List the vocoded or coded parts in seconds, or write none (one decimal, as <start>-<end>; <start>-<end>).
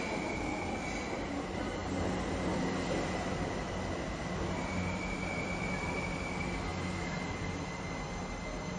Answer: none